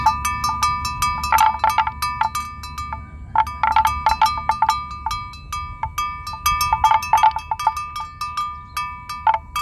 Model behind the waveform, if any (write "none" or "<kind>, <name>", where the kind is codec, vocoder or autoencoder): none